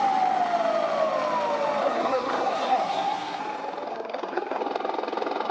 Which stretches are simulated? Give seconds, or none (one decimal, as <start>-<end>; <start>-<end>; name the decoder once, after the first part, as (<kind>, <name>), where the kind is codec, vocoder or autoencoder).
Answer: 1.8-3.4 (codec, SNAC); 3.9-4.6